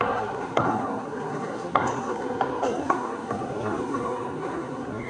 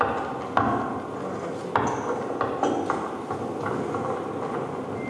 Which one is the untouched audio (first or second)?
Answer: second